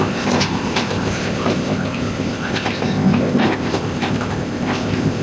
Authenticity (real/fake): fake